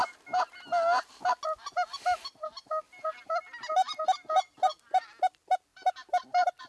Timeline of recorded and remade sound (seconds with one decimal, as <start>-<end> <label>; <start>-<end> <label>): 0.0-5.7 recorded; 5.7-6.7 remade